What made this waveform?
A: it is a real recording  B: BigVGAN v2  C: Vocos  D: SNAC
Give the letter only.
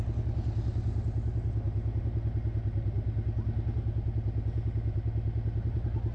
A